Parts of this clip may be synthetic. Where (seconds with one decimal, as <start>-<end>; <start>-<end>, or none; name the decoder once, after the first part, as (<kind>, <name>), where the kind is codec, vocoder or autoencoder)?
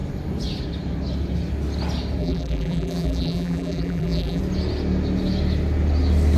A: 2.2-4.4 (vocoder, BigVGAN v2)